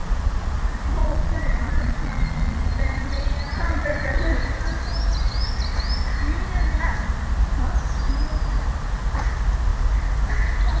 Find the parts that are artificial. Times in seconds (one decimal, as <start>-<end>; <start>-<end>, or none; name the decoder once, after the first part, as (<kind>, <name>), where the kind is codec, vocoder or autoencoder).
0.0-0.6 (vocoder, Vocos); 1.0-4.2